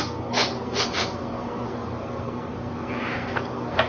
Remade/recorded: remade